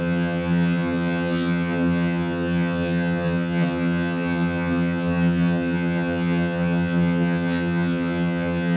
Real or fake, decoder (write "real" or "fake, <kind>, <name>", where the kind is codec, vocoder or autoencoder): fake, vocoder, HiFi-GAN